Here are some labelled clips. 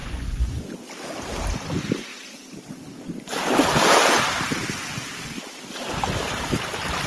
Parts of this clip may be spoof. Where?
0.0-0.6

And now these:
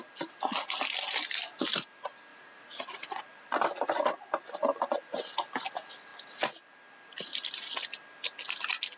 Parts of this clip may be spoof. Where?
2.3-3.2

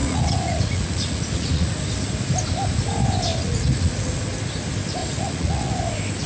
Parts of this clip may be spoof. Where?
0.0-1.7; 3.3-4.2; 5.0-5.8